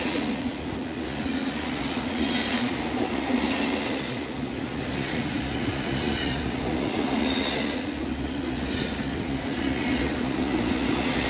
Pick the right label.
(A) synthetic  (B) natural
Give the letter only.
A